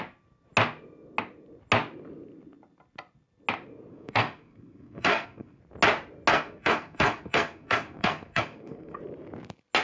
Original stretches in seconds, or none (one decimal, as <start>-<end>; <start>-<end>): 0.0-3.9; 5.6-6.3; 9.0-9.8